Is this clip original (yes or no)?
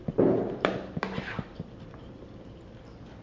yes